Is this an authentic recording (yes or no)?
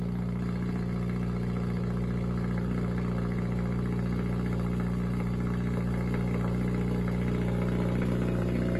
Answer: yes